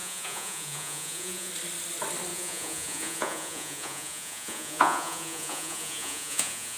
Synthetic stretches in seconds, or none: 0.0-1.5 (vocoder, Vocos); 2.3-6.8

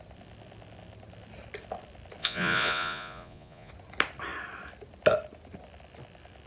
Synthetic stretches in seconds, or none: 2.2-3.7 (vocoder, Vocos)

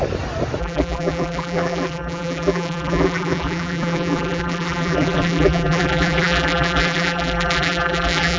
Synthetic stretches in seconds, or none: 0.6-8.4 (vocoder, BigVGAN v2)

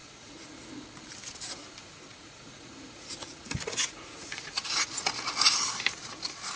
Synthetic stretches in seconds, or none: 0.0-0.7 (vocoder, Vocos); 1.8-5.1